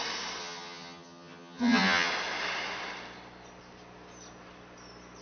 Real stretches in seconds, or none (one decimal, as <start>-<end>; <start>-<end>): 0.0-0.4; 2.1-5.2

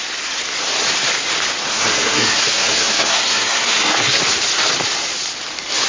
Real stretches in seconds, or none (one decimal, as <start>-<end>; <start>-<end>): 0.0-1.7; 4.2-5.9

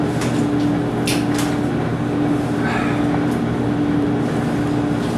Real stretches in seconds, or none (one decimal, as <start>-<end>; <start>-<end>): 0.0-5.2

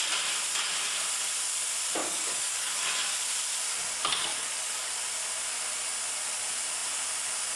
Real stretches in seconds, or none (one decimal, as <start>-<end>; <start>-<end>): 0.0-2.0; 2.8-4.3; 4.9-7.6